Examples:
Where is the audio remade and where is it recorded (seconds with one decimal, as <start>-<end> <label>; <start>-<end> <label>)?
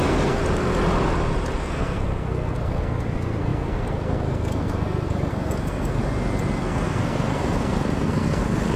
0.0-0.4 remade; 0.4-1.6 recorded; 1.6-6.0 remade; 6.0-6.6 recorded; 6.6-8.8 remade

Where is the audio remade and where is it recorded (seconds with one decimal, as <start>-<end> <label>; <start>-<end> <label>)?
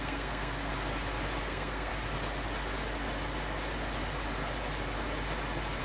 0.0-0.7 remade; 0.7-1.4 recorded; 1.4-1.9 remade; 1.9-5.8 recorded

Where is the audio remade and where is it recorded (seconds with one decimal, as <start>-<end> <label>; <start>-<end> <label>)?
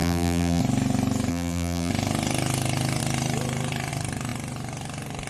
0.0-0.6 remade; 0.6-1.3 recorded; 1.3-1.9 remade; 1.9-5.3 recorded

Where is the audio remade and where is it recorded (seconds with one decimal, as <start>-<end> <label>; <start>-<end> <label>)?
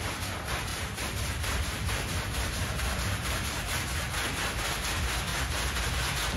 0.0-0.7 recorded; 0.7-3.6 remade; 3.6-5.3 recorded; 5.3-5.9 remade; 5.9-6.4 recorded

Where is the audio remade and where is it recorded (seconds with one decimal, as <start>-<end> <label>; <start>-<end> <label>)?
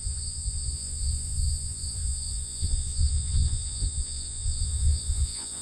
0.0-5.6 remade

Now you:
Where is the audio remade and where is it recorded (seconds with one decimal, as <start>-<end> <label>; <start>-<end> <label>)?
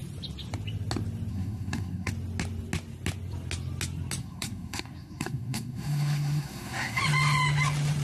0.0-1.3 recorded; 1.3-2.1 remade; 2.1-4.2 recorded; 4.2-7.0 remade; 7.0-8.0 recorded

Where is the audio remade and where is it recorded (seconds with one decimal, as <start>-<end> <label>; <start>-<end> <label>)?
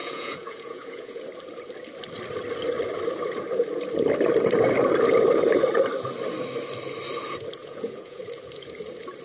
0.0-1.2 remade; 1.2-7.6 recorded; 7.6-8.2 remade; 8.2-9.2 recorded